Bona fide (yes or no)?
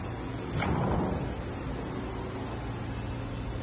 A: yes